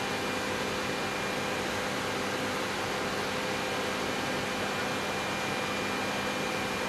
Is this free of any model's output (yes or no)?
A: yes